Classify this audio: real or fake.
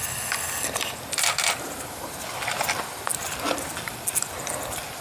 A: real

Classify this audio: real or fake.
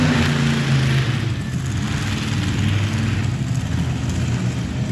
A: real